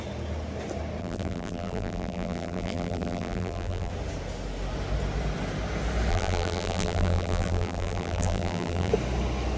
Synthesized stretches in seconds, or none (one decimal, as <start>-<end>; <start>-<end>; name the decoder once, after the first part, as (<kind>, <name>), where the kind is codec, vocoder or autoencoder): 1.0-3.9 (vocoder, BigVGAN v2); 6.1-8.9